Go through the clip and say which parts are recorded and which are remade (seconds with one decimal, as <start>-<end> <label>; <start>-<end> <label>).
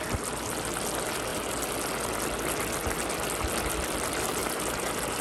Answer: 0.0-5.2 recorded